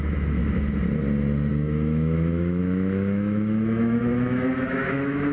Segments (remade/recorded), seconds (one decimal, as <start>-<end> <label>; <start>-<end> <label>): 0.0-0.4 remade; 0.4-1.5 recorded; 1.5-5.3 remade